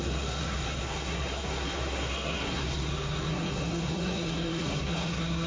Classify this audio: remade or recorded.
remade